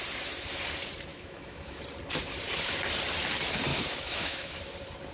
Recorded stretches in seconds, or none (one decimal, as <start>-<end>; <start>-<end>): 0.0-1.1; 1.8-3.7; 4.5-5.1